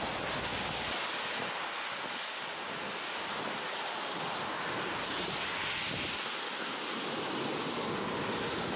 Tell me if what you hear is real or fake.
real